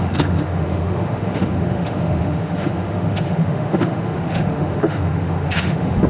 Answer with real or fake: fake